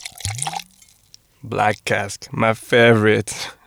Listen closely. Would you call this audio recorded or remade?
recorded